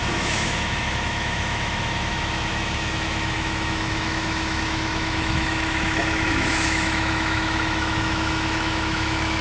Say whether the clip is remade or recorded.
remade